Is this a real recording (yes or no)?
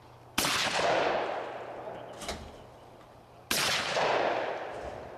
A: yes